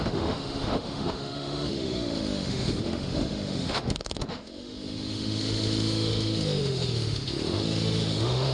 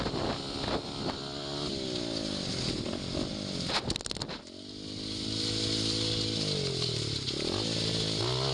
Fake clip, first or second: first